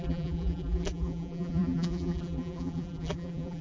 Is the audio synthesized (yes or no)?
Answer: yes